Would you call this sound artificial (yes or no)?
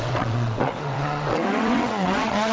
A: yes